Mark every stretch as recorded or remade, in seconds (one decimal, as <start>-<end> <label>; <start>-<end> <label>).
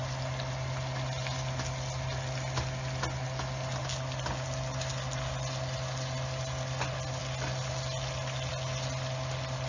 0.0-9.7 recorded